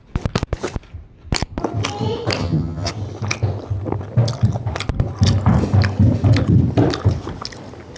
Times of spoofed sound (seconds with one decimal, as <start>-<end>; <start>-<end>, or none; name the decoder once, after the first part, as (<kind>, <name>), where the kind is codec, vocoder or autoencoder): 2.4-2.9 (vocoder, HiFi-GAN)